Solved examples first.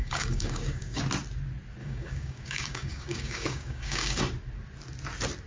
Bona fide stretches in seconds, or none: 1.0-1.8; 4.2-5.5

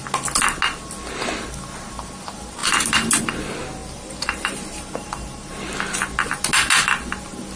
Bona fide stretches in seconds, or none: 0.0-3.8; 5.6-7.6

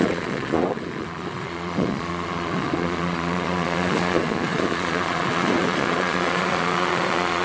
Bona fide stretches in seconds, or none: none

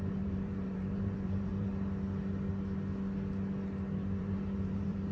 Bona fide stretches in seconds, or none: 1.7-4.2

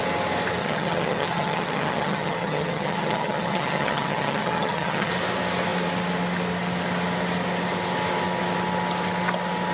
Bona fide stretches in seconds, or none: 0.0-0.6; 5.1-9.7